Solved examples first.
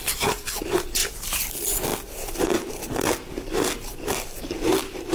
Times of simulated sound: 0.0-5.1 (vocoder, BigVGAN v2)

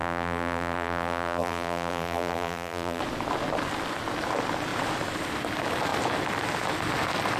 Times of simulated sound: 0.0-3.0 (vocoder, BigVGAN v2)

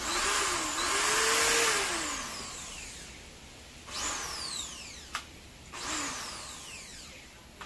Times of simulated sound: none

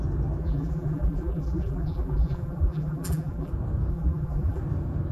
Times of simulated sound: 0.4-3.5 (vocoder, BigVGAN v2); 3.9-4.6